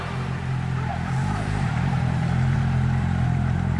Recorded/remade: remade